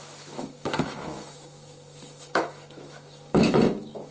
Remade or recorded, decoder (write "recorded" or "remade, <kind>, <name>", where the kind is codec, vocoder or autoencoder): remade, autoencoder, DAC-VAE